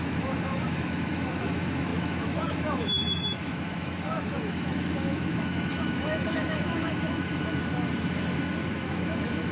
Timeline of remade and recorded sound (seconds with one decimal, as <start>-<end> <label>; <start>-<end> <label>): 0.0-7.6 remade; 7.6-8.7 recorded; 8.7-9.5 remade